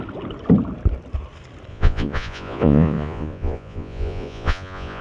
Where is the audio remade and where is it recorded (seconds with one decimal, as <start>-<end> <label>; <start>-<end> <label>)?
0.0-1.7 recorded; 1.7-5.0 remade

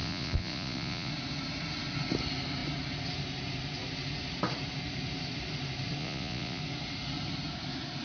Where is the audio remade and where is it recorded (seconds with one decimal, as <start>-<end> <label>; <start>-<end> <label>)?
0.0-1.1 remade; 1.1-6.0 recorded; 6.0-6.6 remade; 6.6-8.0 recorded